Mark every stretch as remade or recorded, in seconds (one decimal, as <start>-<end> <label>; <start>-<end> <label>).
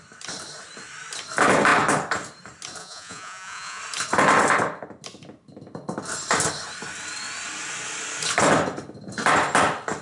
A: 0.0-2.8 recorded; 2.8-3.8 remade; 3.8-10.0 recorded